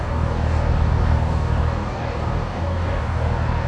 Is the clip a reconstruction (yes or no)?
yes